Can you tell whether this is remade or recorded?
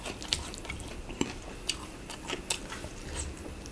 recorded